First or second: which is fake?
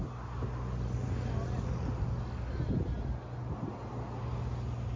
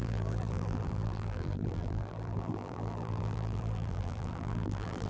second